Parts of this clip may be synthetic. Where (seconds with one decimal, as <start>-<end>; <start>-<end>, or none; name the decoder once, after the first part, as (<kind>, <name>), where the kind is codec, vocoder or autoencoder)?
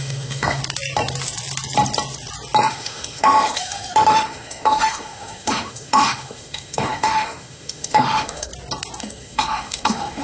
0.0-0.6 (autoencoder, DAC-VAE); 2.7-8.5; 9.0-10.2